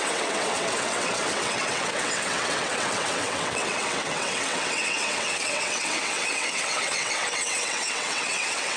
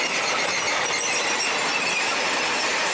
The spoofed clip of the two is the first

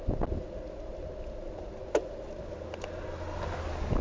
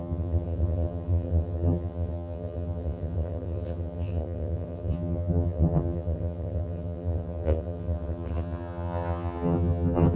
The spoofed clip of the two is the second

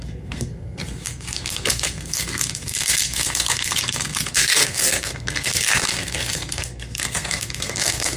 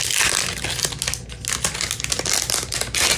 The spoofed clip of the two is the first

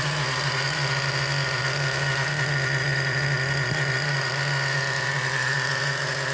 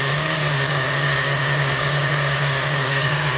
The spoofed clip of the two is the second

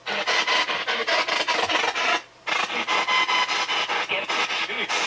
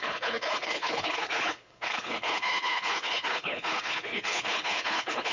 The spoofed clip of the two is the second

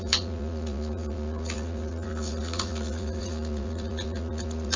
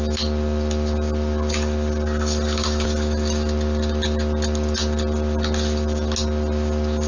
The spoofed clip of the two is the first